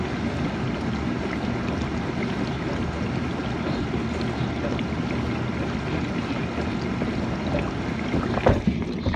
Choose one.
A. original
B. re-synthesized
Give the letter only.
A